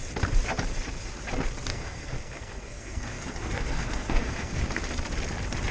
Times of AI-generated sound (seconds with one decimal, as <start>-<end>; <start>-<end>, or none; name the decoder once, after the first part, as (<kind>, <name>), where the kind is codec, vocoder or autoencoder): 1.7-4.6 (codec, SNAC)